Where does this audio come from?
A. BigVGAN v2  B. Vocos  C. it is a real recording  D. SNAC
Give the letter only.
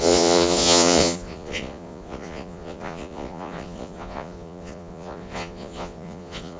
B